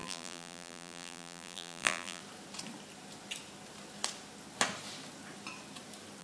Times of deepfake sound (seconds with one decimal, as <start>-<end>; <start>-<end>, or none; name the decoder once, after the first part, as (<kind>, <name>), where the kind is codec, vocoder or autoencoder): 0.0-2.2 (vocoder, BigVGAN v2)